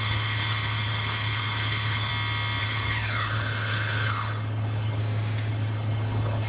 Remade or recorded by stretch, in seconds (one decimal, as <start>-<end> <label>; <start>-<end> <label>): 0.0-2.1 remade; 2.1-2.6 recorded; 2.6-5.0 remade; 5.0-5.5 recorded; 5.5-6.5 remade

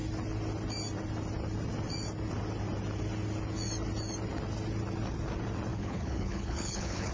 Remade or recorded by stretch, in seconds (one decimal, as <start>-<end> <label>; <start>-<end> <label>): 0.0-5.7 recorded; 5.7-7.1 remade